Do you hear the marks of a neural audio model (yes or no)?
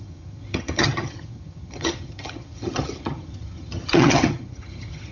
yes